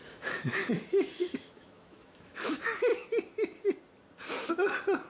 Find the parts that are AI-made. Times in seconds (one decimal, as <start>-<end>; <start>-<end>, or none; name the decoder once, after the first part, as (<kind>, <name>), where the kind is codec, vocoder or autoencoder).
0.0-0.7 (autoencoder, DAC-VAE); 1.2-2.5